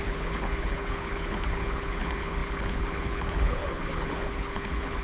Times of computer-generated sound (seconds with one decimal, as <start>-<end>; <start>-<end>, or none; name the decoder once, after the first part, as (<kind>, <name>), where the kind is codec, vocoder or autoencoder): 0.0-5.0 (codec, HILCodec)